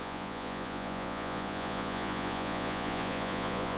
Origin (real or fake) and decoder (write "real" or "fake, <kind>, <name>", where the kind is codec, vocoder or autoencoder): fake, vocoder, Vocos